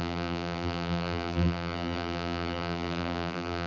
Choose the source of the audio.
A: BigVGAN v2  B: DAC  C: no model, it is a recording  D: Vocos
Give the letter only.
A